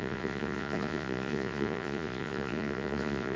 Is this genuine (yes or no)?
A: no